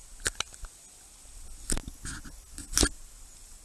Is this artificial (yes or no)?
no